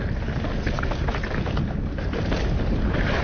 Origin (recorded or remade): recorded